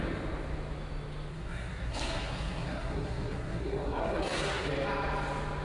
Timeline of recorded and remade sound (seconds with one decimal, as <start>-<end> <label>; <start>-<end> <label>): 0.0-1.3 recorded; 1.3-4.7 remade; 4.7-5.6 recorded